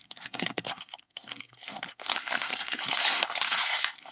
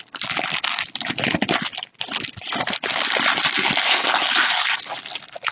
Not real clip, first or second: first